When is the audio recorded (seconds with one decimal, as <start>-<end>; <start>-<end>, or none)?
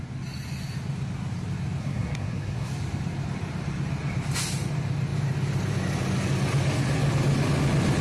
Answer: 0.0-1.8; 2.7-8.0